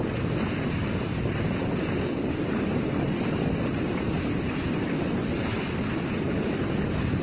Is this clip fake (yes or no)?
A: no